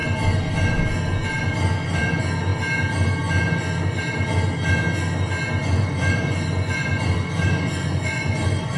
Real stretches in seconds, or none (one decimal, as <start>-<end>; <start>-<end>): 0.0-5.6